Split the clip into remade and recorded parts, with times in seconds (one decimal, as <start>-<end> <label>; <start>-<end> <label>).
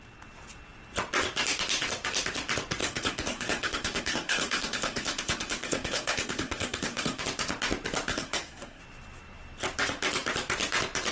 0.0-2.8 recorded; 2.8-7.2 remade; 7.2-8.1 recorded; 8.1-8.8 remade; 8.8-11.1 recorded